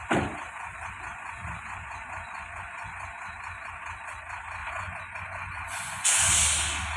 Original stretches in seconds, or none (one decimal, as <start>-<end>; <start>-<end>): 0.0-1.1; 3.8-4.6; 6.3-7.0